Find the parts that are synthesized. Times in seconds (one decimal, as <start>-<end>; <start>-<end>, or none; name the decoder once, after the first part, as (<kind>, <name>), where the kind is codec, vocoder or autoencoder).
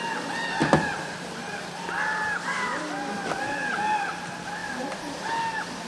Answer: 0.6-4.1 (vocoder, BigVGAN v2); 4.6-5.4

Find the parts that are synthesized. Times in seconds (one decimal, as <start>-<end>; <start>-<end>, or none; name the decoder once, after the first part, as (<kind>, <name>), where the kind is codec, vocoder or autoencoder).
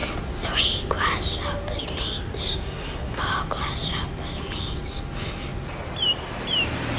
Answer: 2.5-3.2 (codec, SNAC)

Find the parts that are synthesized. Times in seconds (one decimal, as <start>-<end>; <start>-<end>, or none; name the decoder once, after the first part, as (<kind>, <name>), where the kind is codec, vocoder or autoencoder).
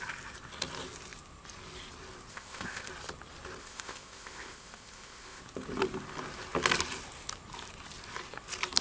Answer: 2.3-2.9 (codec, ZipCodec); 3.6-5.4